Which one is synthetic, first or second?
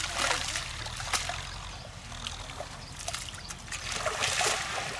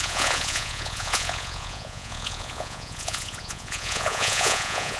second